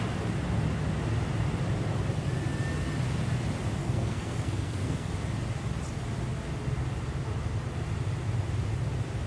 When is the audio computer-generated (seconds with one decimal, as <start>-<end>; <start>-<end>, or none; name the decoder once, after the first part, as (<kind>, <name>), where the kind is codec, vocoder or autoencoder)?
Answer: 3.8-5.1 (codec, SNAC)